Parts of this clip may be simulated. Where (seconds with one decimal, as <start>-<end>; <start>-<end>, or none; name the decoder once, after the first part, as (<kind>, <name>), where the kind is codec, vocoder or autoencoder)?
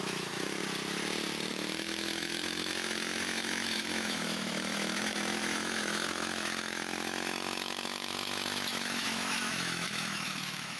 0.0-0.6 (autoencoder, DAC-VAE); 1.5-10.8